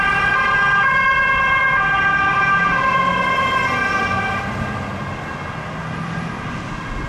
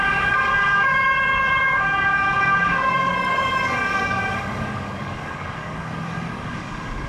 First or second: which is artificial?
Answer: second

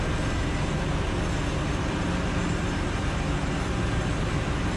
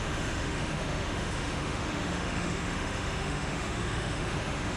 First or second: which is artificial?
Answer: second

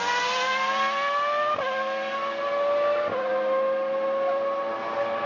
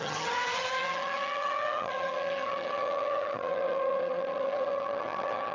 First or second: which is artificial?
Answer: second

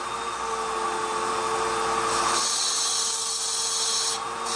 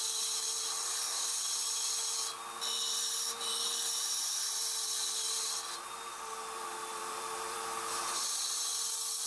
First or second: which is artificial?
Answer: second